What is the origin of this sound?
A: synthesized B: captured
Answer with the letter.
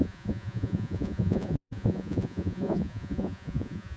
A